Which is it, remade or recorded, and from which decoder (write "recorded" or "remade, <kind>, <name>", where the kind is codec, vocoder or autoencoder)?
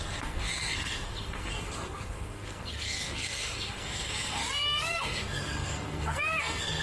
remade, codec, SNAC